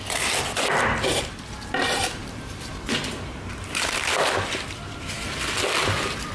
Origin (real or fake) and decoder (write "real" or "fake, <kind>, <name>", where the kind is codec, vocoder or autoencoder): fake, vocoder, BigVGAN v2